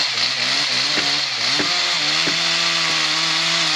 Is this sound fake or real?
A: real